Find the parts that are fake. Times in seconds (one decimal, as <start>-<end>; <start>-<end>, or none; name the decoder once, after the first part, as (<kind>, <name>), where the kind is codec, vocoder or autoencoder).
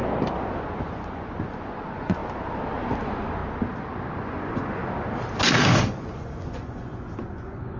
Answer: 0.5-2.2 (vocoder, Vocos); 2.8-3.4; 4.2-4.8; 5.9-7.8